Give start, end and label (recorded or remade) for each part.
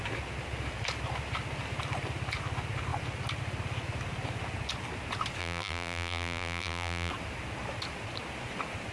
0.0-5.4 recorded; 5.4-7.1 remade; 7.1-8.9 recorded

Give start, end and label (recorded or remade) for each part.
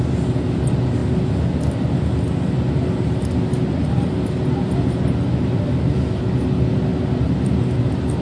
0.0-8.2 recorded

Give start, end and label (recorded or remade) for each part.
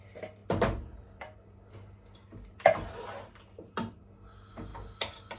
0.0-5.4 recorded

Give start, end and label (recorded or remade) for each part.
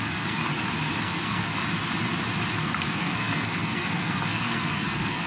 0.0-0.4 remade; 0.4-1.0 recorded; 1.0-1.5 remade; 1.5-2.6 recorded; 2.6-5.3 remade